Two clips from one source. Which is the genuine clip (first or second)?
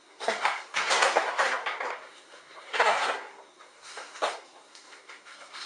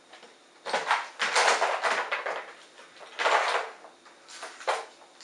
second